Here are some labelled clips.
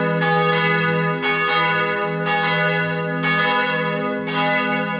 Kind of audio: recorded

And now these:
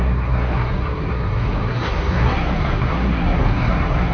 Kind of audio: remade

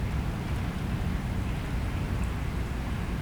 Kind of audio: recorded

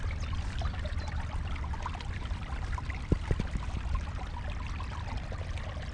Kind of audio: recorded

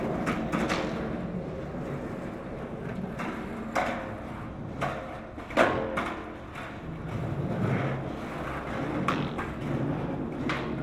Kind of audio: recorded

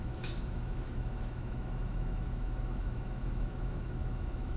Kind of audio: remade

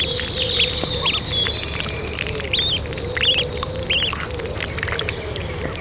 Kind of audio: recorded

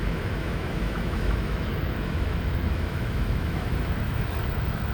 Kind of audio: remade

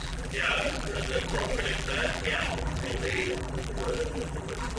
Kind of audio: remade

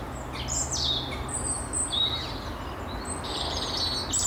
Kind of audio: recorded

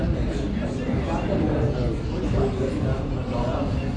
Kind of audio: recorded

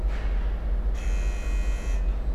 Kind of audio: recorded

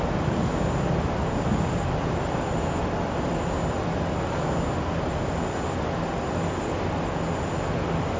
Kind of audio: recorded